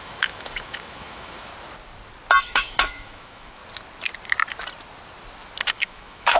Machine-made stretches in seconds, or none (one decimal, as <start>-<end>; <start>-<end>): 0.0-1.5; 2.4-3.6; 5.7-6.4